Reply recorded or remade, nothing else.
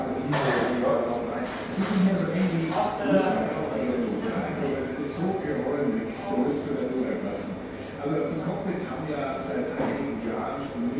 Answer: recorded